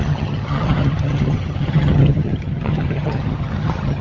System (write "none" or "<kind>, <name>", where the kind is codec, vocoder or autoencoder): vocoder, HiFi-GAN